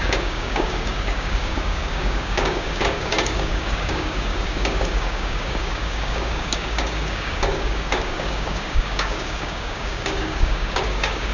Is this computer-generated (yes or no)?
yes